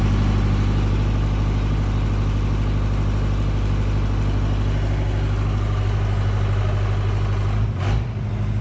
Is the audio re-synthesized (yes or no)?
no